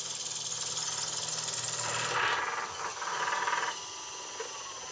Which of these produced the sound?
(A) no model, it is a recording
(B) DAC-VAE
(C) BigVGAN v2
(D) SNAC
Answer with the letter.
A